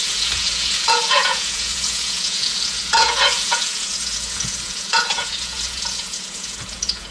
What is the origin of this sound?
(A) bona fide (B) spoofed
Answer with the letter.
B